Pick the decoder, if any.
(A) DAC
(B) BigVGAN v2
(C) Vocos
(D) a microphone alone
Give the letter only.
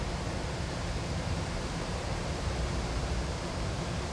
B